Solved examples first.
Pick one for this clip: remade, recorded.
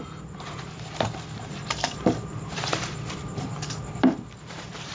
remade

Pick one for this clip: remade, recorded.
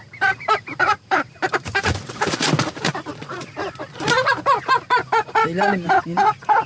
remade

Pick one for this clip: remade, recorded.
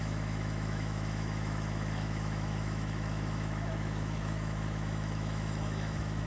remade